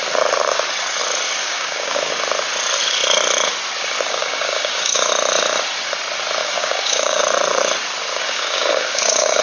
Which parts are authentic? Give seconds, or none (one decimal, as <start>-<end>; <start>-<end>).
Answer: 0.0-1.4; 2.1-4.2; 5.1-6.4; 7.2-8.1